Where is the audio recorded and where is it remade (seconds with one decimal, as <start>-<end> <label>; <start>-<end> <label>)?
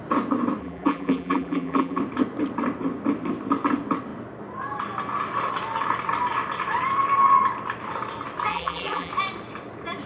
0.0-0.6 recorded; 0.6-2.0 remade; 2.0-8.5 recorded; 8.5-9.1 remade; 9.1-10.1 recorded